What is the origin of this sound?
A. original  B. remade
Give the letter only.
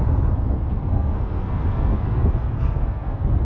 B